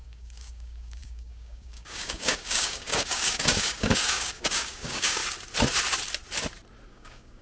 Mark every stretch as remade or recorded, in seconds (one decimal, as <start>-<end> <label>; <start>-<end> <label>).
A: 0.0-5.2 remade; 5.2-6.9 recorded; 6.9-7.4 remade